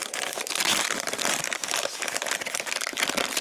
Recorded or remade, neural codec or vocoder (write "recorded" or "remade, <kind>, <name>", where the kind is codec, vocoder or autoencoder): recorded